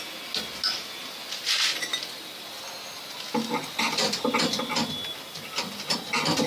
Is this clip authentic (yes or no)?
yes